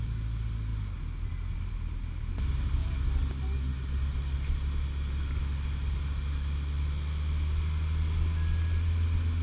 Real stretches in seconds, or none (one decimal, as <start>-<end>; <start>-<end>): 0.0-9.4